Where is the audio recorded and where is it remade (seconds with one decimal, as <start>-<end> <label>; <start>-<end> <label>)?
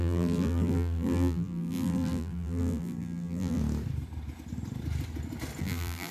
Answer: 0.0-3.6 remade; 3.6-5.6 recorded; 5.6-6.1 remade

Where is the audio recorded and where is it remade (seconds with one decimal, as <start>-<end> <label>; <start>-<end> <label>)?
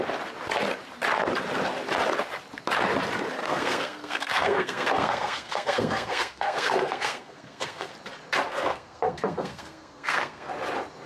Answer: 0.0-3.4 recorded; 3.4-7.9 remade; 7.9-8.5 recorded; 8.5-10.5 remade; 10.5-11.1 recorded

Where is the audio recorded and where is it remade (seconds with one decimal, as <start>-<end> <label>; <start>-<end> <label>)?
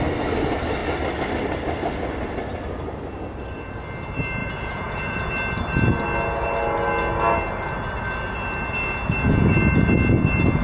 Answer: 0.0-4.4 recorded; 4.4-5.3 remade; 5.3-10.6 recorded